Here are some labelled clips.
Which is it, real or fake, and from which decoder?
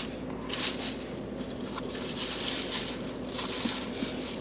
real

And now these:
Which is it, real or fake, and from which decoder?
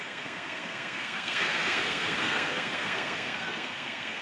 fake, codec, SNAC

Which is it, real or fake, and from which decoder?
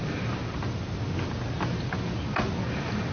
real